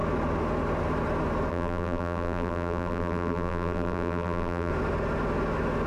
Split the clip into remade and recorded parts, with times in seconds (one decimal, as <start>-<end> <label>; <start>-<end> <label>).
0.0-1.5 recorded; 1.5-4.7 remade; 4.7-5.9 recorded